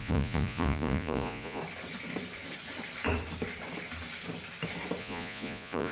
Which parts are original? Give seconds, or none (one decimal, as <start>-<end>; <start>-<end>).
1.6-5.0